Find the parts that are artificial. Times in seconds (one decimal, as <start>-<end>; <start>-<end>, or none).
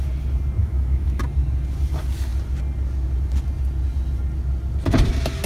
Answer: 0.6-1.2